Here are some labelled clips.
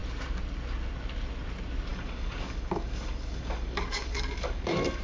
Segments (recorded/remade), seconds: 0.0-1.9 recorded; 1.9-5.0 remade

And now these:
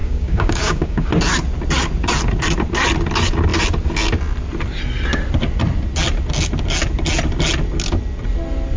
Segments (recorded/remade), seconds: 0.0-1.1 remade; 1.1-8.8 recorded

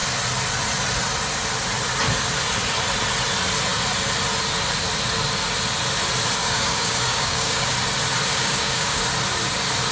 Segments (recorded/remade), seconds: 0.0-6.4 recorded; 6.4-7.7 remade; 7.7-8.3 recorded; 8.3-9.0 remade; 9.0-9.9 recorded

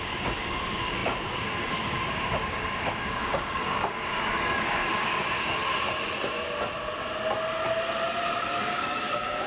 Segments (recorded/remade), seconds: 0.0-5.6 remade; 5.6-8.6 recorded; 8.6-9.5 remade

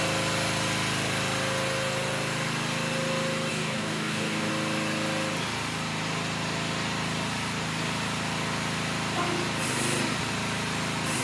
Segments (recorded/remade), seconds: 0.0-3.5 recorded; 3.5-4.5 remade; 4.5-11.2 recorded